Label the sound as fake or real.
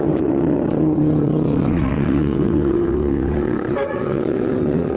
fake